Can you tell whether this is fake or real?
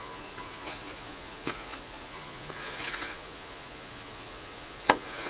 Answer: fake